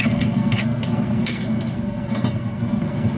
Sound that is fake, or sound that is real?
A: fake